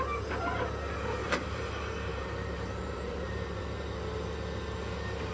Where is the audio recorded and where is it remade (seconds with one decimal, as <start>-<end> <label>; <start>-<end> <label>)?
0.0-1.2 recorded; 1.2-1.7 remade; 1.7-2.1 recorded; 2.1-3.6 remade; 3.6-5.3 recorded